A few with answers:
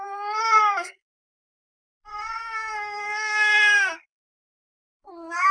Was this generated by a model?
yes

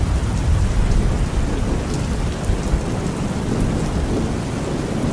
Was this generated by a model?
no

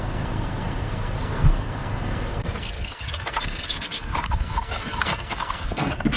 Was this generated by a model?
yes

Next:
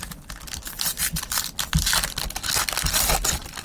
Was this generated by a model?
no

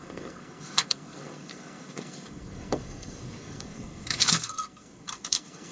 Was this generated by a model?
yes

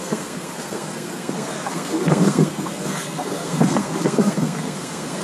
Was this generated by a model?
yes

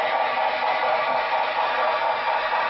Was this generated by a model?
no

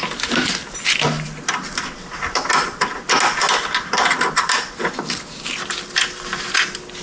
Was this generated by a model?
no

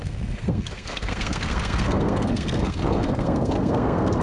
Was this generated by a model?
yes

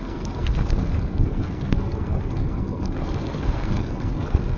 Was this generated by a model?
yes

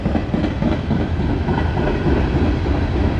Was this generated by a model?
no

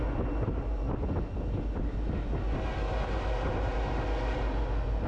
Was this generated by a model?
no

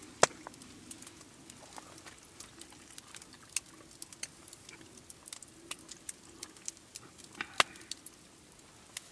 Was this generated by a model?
no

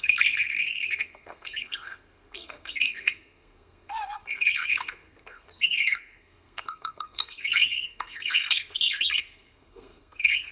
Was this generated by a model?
yes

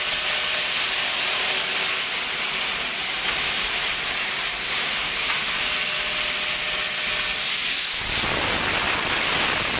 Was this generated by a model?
no